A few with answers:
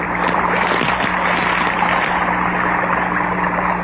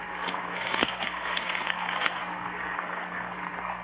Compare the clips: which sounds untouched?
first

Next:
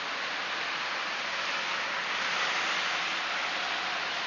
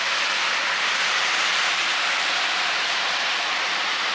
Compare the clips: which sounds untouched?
first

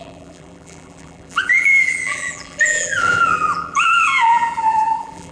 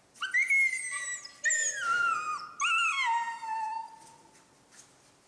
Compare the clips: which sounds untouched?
second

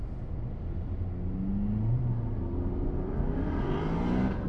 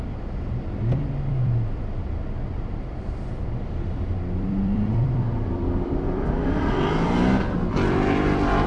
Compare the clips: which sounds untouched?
first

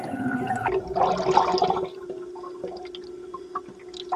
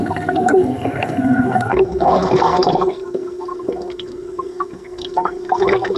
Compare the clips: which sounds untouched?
first